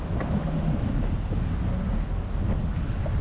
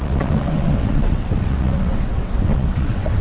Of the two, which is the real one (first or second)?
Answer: first